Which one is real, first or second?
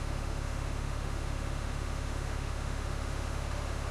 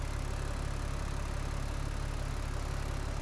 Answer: second